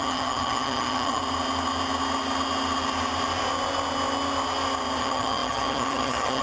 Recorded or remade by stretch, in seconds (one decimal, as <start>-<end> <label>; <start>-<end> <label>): 0.0-1.2 remade; 1.2-5.0 recorded; 5.0-6.4 remade